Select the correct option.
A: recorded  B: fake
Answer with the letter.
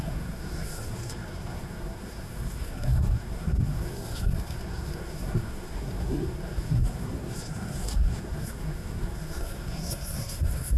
B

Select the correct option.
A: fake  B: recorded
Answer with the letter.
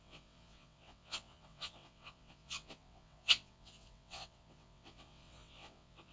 A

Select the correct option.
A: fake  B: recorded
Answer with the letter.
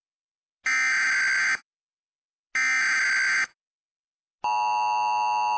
B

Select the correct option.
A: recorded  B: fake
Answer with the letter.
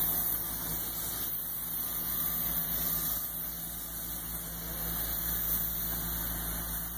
A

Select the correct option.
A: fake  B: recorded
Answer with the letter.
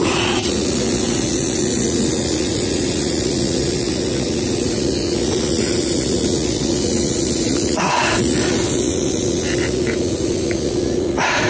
A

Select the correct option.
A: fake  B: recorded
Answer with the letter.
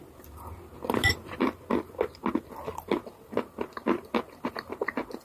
B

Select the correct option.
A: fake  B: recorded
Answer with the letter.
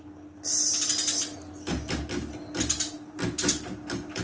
B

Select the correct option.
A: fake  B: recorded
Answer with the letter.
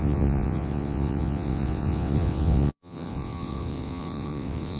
A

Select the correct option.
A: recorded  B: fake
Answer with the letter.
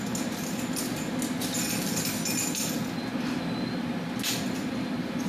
A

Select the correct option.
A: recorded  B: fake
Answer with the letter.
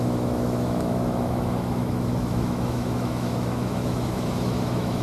B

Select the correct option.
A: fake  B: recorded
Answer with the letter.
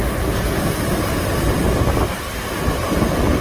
B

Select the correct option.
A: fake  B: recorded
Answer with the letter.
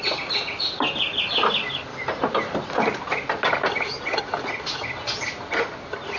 B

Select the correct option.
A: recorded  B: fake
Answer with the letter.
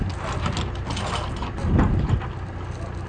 A